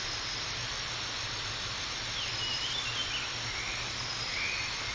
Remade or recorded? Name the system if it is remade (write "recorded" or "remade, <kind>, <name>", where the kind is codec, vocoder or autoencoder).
recorded